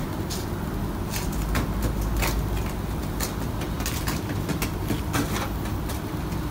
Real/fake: real